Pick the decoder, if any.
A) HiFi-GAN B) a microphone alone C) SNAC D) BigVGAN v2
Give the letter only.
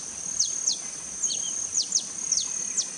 B